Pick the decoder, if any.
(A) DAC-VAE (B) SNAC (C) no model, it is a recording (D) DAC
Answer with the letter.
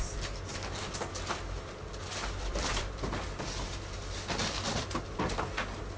C